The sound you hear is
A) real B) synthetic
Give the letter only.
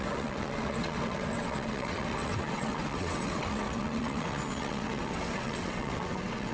B